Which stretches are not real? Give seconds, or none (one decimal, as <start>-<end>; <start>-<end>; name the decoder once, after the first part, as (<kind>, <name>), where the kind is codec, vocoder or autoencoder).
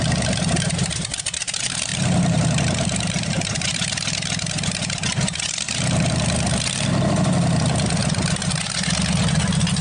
1.9-3.3 (vocoder, BigVGAN v2)